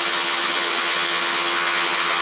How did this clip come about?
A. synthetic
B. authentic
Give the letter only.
A